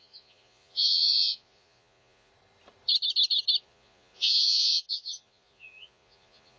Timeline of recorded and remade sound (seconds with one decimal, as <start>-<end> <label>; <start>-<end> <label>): 0.0-2.3 remade; 2.3-3.6 recorded; 3.6-6.6 remade